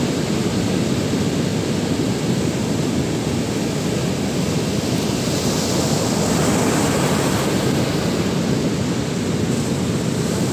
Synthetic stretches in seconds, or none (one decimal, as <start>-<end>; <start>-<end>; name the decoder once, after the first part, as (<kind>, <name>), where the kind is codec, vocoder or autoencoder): none